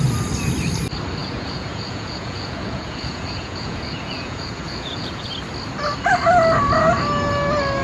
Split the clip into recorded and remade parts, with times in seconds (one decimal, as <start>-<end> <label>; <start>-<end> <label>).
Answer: 0.0-1.2 recorded; 1.2-5.3 remade; 5.3-7.8 recorded

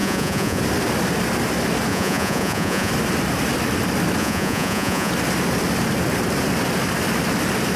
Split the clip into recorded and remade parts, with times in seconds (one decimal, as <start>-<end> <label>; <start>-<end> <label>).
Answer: 0.0-0.6 remade; 0.6-1.9 recorded; 1.9-2.9 remade; 2.9-4.2 recorded; 4.2-5.1 remade; 5.1-7.8 recorded